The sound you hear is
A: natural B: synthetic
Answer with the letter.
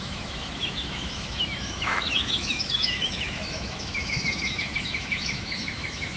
B